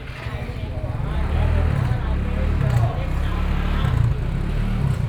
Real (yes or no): yes